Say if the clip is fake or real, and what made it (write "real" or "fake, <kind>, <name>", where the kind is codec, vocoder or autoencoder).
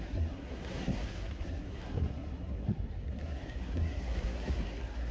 fake, codec, SNAC